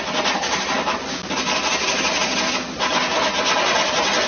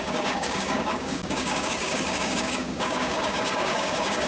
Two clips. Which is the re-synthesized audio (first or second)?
second